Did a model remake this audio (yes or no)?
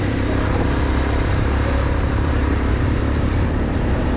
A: yes